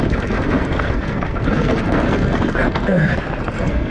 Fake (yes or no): yes